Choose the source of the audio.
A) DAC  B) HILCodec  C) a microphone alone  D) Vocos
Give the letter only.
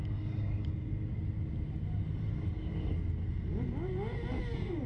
C